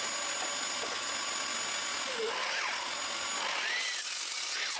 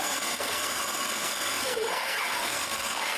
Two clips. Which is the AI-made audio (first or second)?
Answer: second